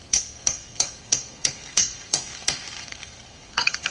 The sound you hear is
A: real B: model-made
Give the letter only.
B